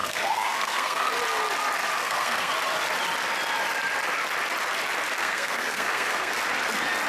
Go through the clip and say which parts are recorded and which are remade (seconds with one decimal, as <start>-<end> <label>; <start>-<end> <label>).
0.0-1.1 remade; 1.1-2.0 recorded; 2.0-2.5 remade; 2.5-5.2 recorded; 5.2-6.3 remade; 6.3-7.1 recorded